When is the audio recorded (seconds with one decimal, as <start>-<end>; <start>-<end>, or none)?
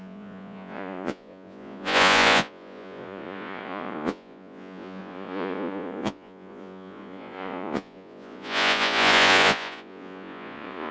none